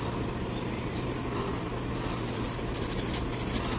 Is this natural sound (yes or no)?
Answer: yes